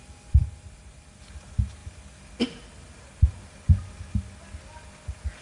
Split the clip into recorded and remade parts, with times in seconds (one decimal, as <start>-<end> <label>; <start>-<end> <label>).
0.0-5.4 recorded